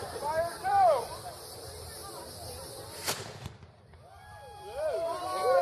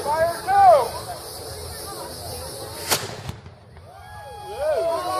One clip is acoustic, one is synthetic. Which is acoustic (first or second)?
second